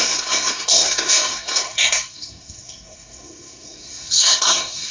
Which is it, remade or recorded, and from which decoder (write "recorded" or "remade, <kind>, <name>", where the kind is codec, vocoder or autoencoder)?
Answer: remade, codec, SNAC